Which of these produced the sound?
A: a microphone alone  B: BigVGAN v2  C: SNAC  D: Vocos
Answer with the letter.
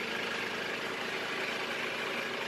A